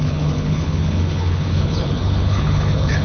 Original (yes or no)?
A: no